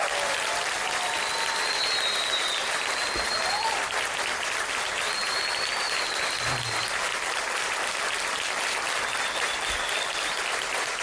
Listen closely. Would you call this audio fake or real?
real